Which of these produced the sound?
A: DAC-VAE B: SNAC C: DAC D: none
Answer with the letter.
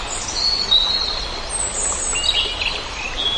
D